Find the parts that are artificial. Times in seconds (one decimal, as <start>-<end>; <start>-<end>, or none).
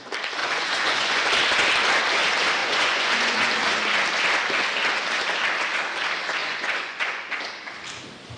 0.4-1.3; 2.6-3.5; 6.4-7.3